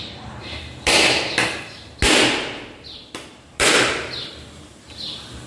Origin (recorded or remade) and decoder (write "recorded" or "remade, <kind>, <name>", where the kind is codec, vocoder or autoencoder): recorded